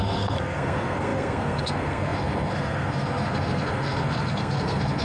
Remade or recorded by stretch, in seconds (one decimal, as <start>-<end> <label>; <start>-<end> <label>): 0.0-5.0 remade